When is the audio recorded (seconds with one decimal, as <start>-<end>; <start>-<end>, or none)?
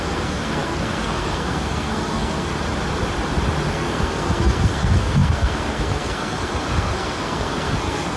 2.5-3.7